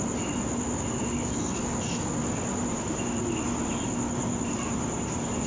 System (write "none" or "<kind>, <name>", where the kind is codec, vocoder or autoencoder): none